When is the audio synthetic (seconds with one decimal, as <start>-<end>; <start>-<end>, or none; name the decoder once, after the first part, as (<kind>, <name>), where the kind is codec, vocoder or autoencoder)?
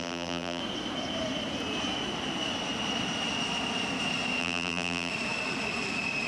0.0-0.6 (vocoder, BigVGAN v2); 4.4-5.1